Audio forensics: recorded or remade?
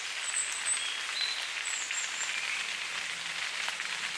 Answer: recorded